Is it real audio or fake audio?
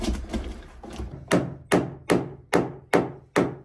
real